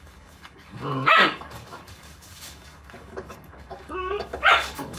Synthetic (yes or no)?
yes